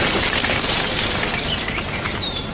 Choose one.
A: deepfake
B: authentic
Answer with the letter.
A